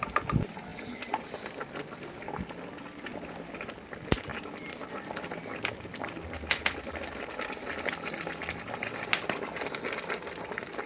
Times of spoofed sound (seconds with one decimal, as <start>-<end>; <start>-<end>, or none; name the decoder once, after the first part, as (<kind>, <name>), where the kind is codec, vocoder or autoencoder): none